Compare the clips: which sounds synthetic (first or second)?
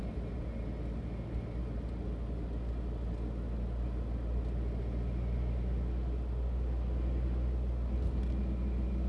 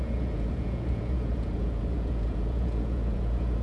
second